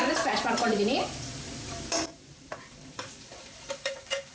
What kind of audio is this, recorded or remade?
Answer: remade